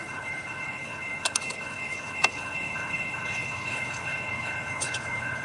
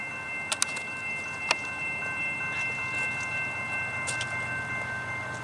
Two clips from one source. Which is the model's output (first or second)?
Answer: first